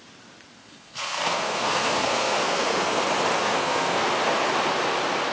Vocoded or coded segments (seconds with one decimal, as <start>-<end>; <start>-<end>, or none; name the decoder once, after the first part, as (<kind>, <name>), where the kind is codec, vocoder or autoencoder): 0.6-3.0 (codec, SNAC); 3.4-4.1